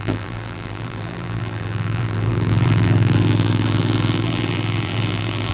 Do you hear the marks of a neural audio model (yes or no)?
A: yes